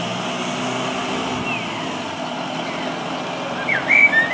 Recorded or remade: recorded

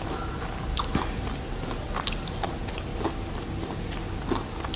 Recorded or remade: recorded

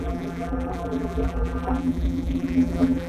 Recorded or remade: remade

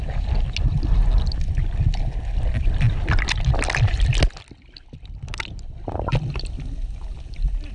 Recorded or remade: recorded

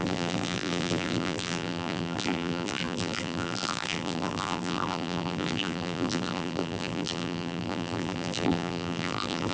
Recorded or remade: remade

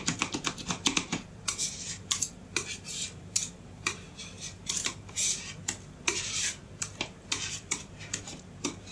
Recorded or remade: remade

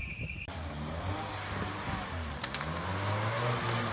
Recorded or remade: recorded